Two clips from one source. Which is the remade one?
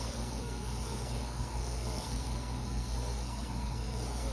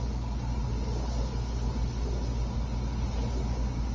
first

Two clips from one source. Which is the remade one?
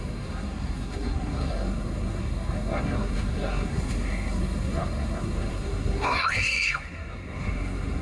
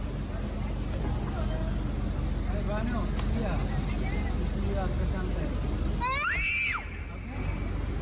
first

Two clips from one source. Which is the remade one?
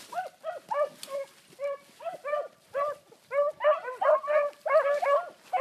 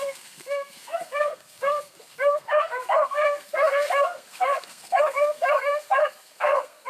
second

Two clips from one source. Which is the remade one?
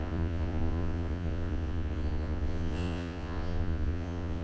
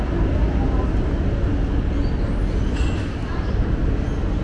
first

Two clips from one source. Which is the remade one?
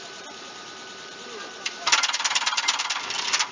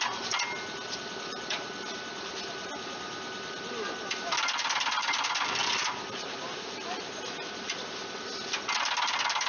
first